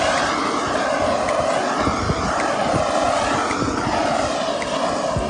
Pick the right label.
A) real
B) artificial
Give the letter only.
A